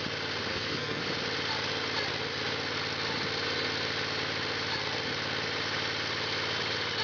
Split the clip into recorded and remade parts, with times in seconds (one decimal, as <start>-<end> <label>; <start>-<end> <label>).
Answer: 0.0-0.5 recorded; 0.5-1.0 remade; 1.0-7.0 recorded

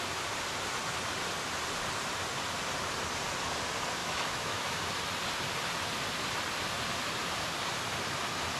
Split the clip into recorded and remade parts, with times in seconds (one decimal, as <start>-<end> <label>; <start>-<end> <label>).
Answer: 0.0-4.0 recorded; 4.0-4.8 remade; 4.8-8.6 recorded

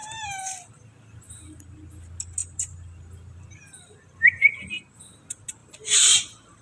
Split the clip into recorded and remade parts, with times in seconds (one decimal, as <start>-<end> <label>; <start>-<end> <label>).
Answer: 0.0-1.6 remade; 1.6-2.4 recorded; 2.4-5.0 remade; 5.0-5.6 recorded; 5.6-6.6 remade

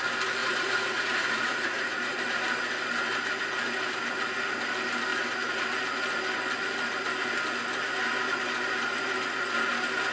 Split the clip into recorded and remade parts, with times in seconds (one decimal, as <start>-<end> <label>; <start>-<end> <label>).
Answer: 0.0-0.4 recorded; 0.4-2.2 remade; 2.2-10.1 recorded

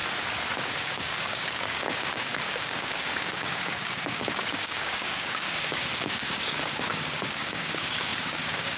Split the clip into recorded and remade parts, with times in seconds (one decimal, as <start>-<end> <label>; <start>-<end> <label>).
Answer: 0.0-0.7 recorded; 0.7-8.8 remade